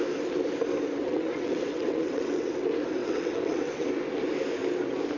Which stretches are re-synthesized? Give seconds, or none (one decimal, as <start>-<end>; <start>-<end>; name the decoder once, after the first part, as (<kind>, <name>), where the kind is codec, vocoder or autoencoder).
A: 1.0-2.5 (vocoder, WaveNeXt); 3.0-3.9